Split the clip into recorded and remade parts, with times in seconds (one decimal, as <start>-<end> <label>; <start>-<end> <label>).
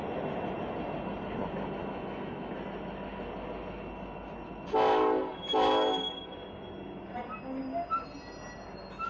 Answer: 0.0-1.8 recorded; 1.8-2.5 remade; 2.5-9.1 recorded